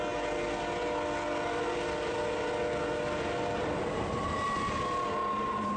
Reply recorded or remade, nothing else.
recorded